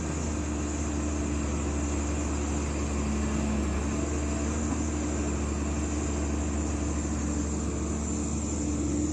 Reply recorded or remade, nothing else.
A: recorded